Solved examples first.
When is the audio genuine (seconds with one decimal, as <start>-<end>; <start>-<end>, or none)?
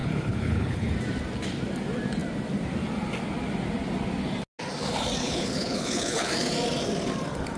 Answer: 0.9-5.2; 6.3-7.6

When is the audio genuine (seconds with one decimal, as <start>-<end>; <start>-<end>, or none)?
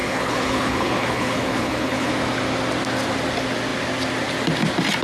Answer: 2.1-5.0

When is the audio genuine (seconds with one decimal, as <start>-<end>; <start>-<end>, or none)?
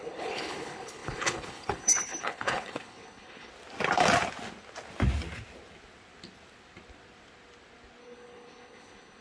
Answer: 3.5-8.0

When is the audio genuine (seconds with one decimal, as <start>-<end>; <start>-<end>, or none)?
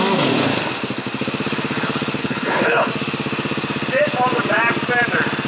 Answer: 0.0-2.2; 2.9-5.5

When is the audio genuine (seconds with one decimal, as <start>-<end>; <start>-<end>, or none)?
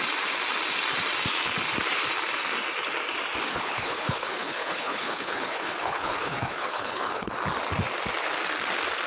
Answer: 0.0-3.5; 7.3-9.1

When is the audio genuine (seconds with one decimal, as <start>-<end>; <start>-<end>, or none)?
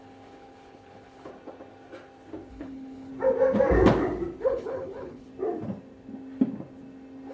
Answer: 1.3-2.5; 3.1-4.4; 5.3-7.3